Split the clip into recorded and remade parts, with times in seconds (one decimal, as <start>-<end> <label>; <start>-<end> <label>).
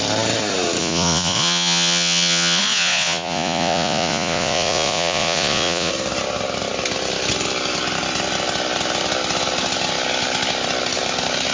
0.0-0.8 recorded; 0.8-5.9 remade; 5.9-11.5 recorded